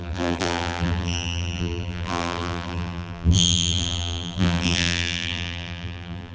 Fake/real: fake